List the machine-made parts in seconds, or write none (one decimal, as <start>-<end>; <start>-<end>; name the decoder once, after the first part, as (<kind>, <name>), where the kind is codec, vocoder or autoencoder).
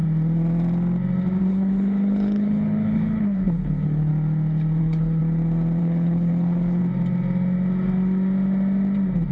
1.4-4.1 (codec, HILCodec); 4.8-5.2; 5.8-6.8